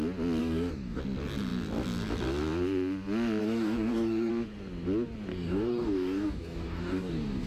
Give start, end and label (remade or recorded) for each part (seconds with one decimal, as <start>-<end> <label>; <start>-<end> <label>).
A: 0.0-0.4 recorded; 0.4-1.0 remade; 1.0-3.4 recorded; 3.4-4.3 remade; 4.3-5.3 recorded; 5.3-7.5 remade